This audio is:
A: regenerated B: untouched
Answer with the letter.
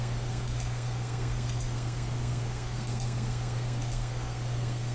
A